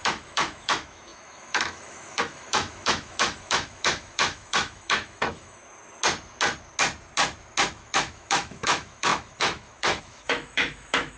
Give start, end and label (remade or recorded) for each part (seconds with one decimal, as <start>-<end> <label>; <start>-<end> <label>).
0.0-5.6 remade; 5.6-7.7 recorded; 7.7-11.2 remade